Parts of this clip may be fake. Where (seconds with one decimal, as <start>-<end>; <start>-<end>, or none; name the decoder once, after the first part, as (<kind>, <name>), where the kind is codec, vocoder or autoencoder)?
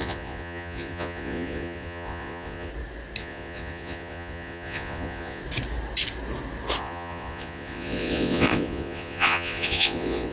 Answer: 0.0-2.7 (vocoder, Vocos); 3.2-5.4; 6.8-10.3